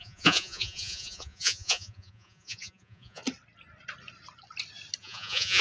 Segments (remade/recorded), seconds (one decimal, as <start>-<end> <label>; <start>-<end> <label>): 0.0-3.2 remade; 3.2-5.0 recorded; 5.0-5.6 remade